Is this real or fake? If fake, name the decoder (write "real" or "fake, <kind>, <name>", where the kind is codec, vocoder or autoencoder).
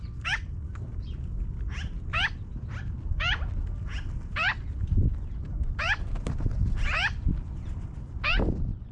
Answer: fake, vocoder, BigVGAN v2